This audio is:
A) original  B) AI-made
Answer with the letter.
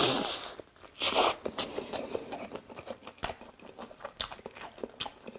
A